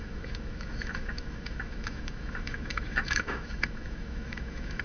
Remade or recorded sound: remade